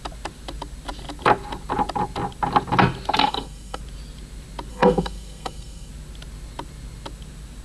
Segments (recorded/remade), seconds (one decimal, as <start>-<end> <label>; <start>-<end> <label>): 0.0-3.2 recorded; 3.2-3.8 remade; 3.8-4.7 recorded; 4.7-5.9 remade; 5.9-7.6 recorded